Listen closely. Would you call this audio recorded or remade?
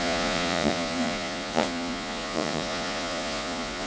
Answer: remade